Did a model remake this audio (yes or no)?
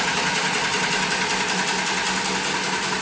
no